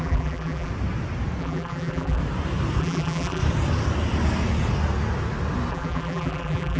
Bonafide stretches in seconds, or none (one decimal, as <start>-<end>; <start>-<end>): 0.7-1.4; 2.2-2.8; 3.4-5.7